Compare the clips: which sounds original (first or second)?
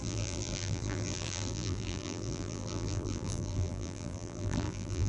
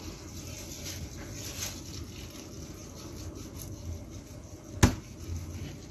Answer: second